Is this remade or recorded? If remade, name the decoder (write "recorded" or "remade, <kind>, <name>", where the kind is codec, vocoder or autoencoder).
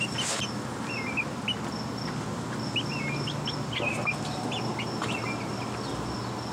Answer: recorded